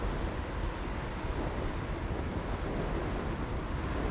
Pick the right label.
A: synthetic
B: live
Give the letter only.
B